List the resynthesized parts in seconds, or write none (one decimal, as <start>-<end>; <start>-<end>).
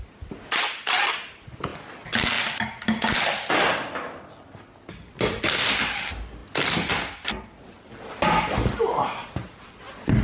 none